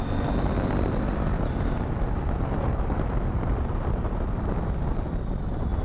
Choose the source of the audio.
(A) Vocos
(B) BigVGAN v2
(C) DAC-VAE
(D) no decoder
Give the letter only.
D